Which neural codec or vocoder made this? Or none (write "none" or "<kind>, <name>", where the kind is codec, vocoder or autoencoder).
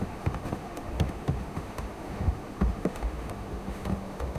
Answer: autoencoder, DAC-VAE